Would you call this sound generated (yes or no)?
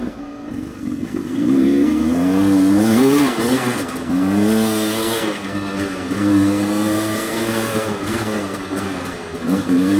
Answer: yes